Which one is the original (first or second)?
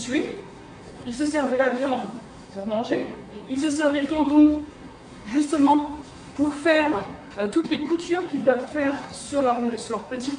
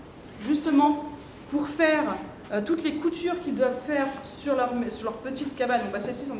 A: second